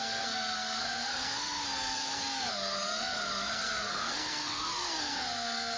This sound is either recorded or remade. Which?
remade